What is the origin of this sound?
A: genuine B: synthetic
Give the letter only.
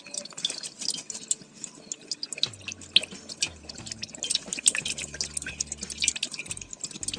A